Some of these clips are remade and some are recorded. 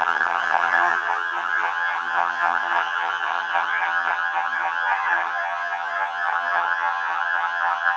remade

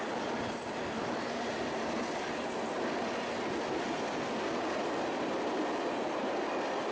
recorded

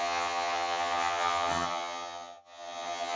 remade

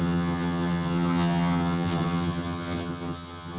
remade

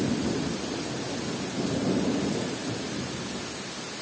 recorded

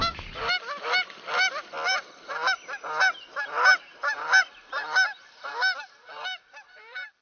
recorded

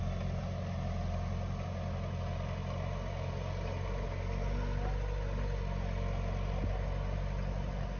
recorded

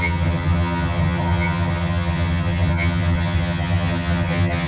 remade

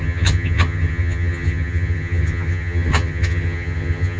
remade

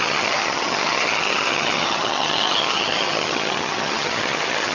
remade